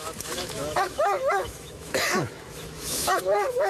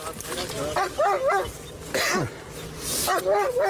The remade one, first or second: first